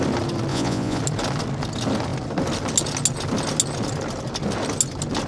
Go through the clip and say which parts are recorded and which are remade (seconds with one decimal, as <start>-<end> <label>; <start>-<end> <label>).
0.0-0.5 recorded; 0.5-1.0 remade; 1.0-5.3 recorded